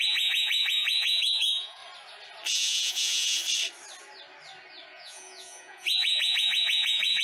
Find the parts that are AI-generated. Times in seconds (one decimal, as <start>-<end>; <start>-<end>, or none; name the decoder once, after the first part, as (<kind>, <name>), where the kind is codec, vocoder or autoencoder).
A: 0.0-1.8 (vocoder, Vocos); 2.5-3.4; 4.9-7.2